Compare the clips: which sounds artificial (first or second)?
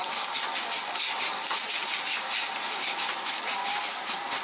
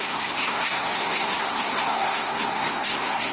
second